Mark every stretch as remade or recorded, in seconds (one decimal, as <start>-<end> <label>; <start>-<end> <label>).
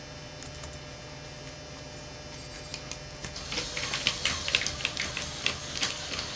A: 0.0-6.4 recorded